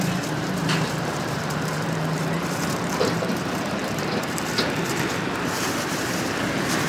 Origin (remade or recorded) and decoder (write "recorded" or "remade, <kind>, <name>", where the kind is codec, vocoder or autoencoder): remade, vocoder, BigVGAN v2